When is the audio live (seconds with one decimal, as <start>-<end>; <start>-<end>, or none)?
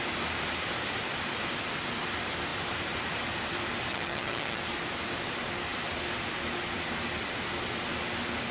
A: 0.0-3.9; 4.6-8.5